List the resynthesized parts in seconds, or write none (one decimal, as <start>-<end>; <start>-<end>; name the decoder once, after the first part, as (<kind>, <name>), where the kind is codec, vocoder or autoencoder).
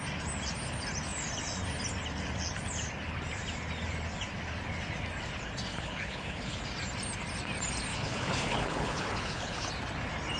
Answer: 5.7-6.6 (codec, HILCodec); 7.9-9.7